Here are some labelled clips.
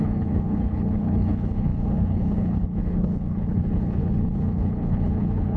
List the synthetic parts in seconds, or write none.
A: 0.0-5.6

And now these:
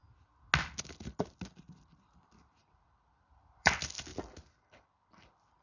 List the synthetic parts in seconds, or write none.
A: 1.6-4.1; 4.7-5.6